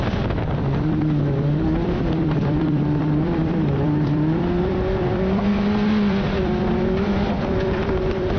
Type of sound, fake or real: fake